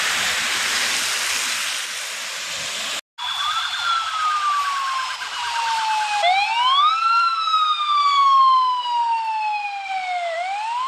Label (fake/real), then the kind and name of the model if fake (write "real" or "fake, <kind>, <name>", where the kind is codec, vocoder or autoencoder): real